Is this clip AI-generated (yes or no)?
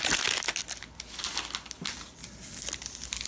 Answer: no